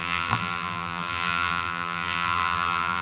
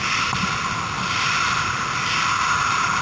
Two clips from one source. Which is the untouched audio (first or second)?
second